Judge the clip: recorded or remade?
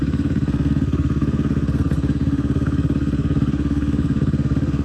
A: remade